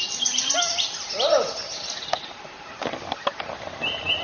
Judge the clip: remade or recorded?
recorded